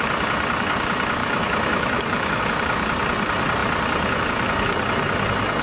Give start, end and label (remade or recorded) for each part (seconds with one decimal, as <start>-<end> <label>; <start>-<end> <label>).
0.0-1.2 recorded; 1.2-2.5 remade; 2.5-5.6 recorded